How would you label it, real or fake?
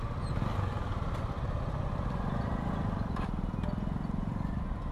real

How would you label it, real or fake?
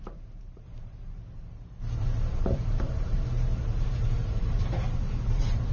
fake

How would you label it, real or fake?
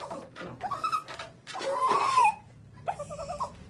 fake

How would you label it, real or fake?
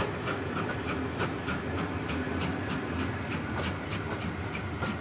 real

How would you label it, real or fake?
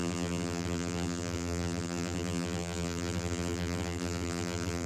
fake